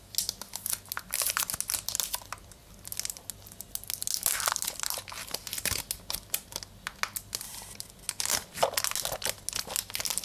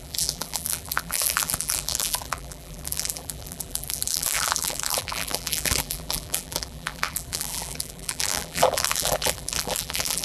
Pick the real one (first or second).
first